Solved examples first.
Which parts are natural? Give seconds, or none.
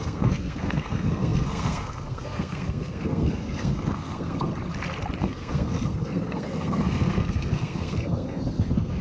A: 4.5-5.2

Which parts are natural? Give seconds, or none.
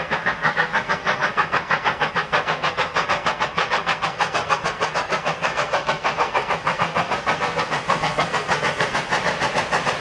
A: 9.1-10.0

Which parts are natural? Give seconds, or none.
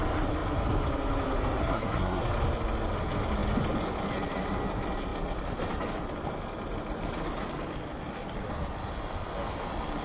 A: 0.0-1.6; 2.2-10.0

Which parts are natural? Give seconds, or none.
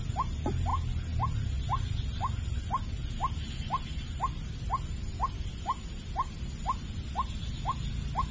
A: 0.0-8.3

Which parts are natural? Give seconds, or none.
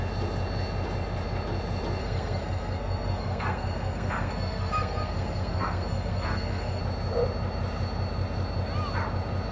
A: 0.0-2.0; 6.8-9.5